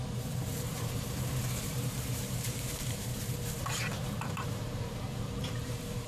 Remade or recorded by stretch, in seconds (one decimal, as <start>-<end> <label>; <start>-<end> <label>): 0.0-6.1 remade